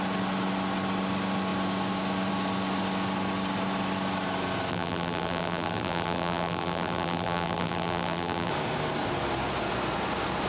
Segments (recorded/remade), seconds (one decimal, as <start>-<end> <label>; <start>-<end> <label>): 0.0-4.7 recorded; 4.7-8.5 remade; 8.5-10.5 recorded